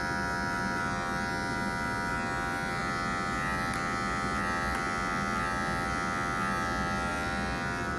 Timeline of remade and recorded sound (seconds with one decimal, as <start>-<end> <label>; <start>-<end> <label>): 0.0-8.0 recorded